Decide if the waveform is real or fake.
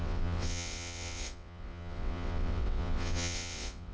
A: fake